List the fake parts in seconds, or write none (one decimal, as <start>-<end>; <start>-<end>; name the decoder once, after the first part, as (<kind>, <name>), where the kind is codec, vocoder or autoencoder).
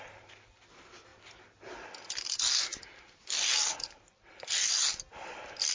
none